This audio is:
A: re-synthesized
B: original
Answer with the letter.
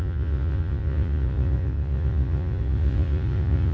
A